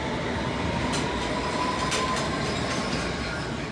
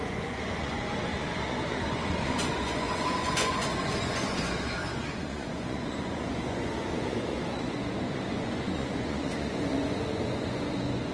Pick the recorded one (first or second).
first